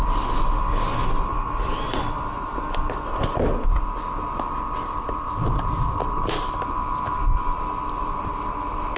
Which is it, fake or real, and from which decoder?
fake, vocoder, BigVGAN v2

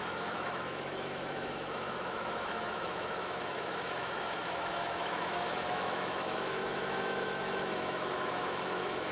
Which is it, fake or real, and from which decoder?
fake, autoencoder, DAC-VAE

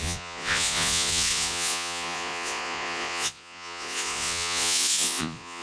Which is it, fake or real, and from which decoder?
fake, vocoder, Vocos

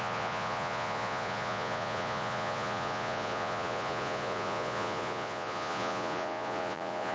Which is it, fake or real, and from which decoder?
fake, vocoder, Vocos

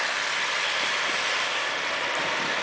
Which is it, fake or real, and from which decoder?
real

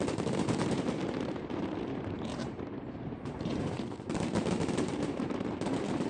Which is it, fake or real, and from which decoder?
fake, vocoder, BigVGAN v2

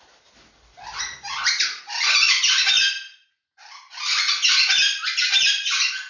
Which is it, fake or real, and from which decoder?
real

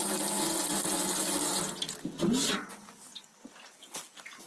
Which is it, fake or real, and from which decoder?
real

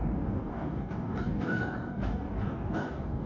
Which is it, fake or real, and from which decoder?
fake, codec, DAC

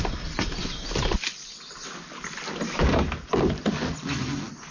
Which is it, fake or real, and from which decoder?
real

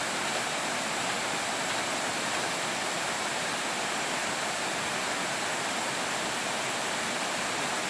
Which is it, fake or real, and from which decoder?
real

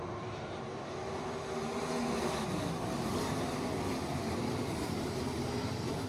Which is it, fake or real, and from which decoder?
fake, vocoder, BigVGAN v2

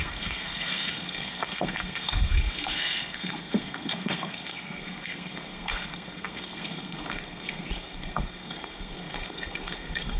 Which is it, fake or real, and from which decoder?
fake, codec, SNAC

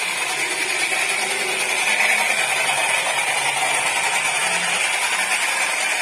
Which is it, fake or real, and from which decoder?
real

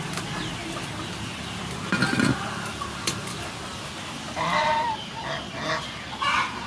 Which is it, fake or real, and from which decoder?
real